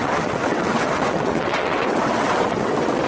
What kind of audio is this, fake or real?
fake